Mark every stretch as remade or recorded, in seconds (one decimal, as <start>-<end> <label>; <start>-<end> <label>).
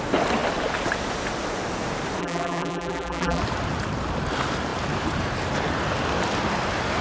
0.0-2.2 recorded; 2.2-3.4 remade; 3.4-7.0 recorded